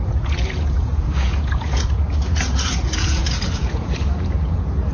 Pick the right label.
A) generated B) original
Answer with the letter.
A